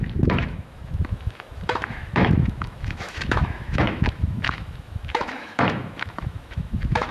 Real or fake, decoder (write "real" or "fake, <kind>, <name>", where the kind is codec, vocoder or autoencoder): fake, autoencoder, DAC-VAE